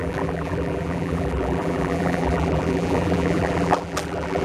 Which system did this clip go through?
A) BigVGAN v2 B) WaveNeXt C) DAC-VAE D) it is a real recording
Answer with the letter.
A